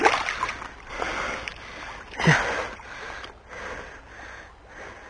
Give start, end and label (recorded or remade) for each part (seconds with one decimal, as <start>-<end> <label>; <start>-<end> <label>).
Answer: 0.0-5.1 recorded